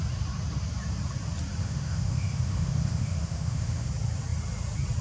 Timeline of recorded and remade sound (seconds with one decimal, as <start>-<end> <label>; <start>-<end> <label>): 0.0-1.6 recorded; 1.6-3.9 remade; 3.9-5.0 recorded